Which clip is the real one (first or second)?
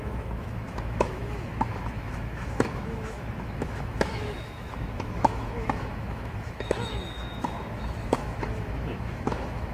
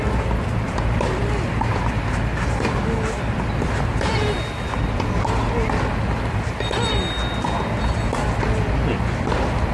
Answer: second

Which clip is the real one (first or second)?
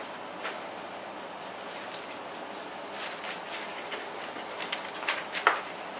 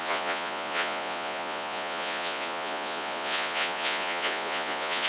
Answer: first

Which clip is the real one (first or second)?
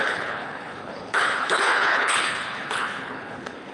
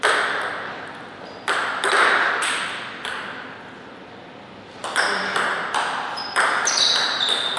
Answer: second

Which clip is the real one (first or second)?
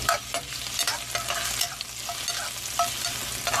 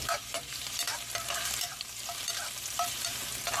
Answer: first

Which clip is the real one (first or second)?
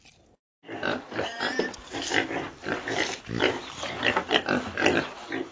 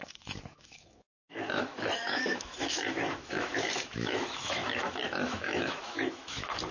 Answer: first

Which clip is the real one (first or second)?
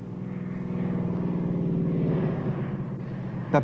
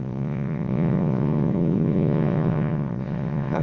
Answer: first